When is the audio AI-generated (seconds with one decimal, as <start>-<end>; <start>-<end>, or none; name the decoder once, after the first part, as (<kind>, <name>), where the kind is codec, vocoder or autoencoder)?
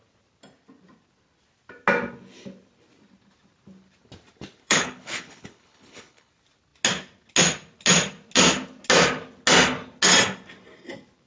4.6-6.3 (codec, HILCodec)